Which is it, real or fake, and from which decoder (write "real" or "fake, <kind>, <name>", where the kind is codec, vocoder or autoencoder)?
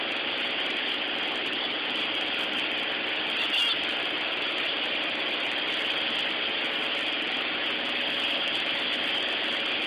real